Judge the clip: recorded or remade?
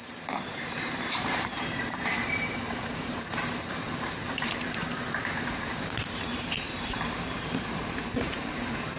remade